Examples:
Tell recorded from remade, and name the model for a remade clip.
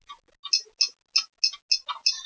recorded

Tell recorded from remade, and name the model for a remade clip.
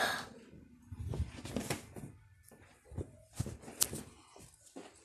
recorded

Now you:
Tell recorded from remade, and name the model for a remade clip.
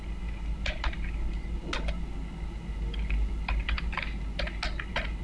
recorded